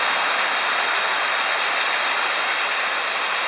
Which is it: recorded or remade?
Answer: recorded